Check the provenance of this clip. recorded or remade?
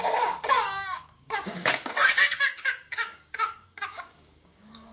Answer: remade